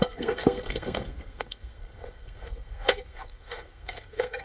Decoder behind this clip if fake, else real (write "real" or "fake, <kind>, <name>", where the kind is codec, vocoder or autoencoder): fake, codec, SNAC